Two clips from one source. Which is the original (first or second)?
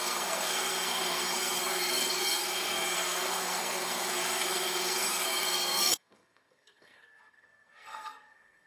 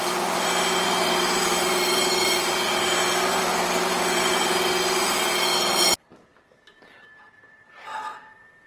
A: second